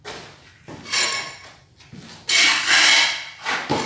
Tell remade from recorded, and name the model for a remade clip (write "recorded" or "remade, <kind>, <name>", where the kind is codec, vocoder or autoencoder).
recorded